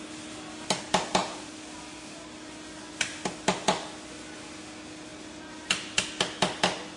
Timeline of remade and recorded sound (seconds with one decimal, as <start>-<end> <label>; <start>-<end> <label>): 0.0-7.0 recorded